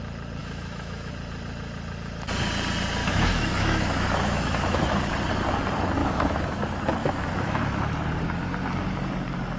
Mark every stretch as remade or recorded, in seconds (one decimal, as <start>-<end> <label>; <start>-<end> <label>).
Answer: 0.0-0.4 recorded; 0.4-1.1 remade; 1.1-3.0 recorded; 3.0-5.0 remade; 5.0-6.0 recorded; 6.0-6.6 remade; 6.6-7.0 recorded; 7.0-7.8 remade; 7.8-9.6 recorded